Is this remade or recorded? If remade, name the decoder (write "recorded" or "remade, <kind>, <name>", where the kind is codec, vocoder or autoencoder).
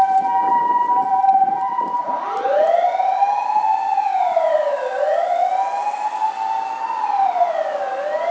recorded